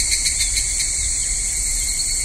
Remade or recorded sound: recorded